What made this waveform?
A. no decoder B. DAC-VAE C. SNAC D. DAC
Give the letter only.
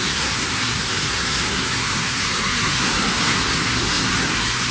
C